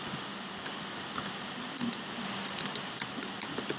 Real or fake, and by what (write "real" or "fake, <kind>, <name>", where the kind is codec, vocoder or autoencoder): real